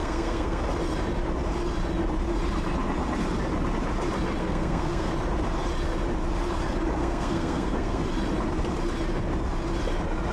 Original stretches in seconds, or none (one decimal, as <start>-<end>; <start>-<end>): 0.6-4.4; 5.1-7.0; 8.0-10.3